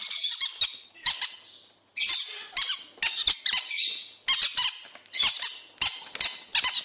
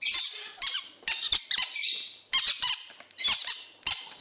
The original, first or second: first